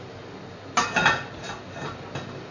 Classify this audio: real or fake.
real